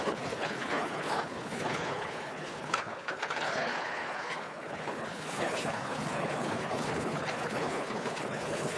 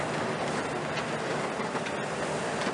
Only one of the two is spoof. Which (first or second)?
first